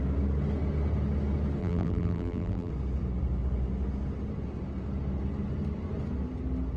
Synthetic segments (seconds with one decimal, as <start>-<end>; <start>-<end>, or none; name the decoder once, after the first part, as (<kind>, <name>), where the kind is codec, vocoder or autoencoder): 1.6-2.7 (vocoder, BigVGAN v2)